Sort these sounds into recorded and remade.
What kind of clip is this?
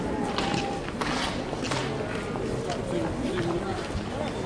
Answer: recorded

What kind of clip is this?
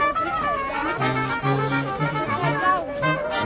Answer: recorded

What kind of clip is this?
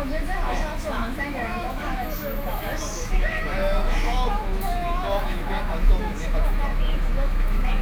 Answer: remade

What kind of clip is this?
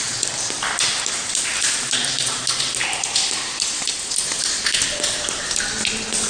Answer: recorded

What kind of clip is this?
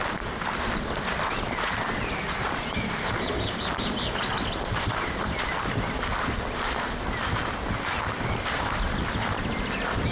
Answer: remade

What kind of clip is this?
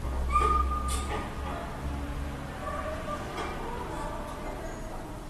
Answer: recorded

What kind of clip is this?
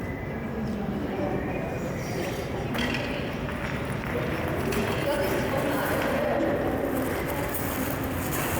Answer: recorded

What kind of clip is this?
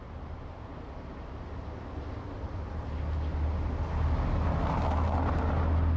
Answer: recorded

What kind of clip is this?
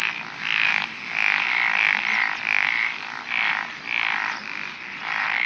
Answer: recorded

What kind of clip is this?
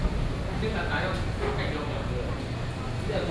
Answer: recorded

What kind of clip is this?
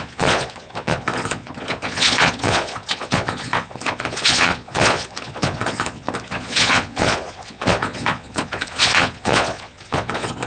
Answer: remade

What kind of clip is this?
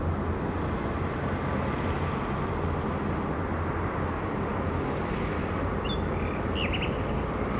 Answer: recorded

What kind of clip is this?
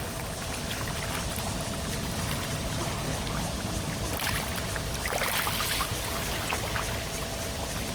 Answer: recorded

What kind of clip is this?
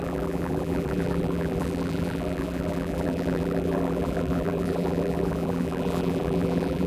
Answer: remade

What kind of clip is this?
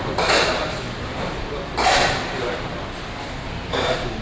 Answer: recorded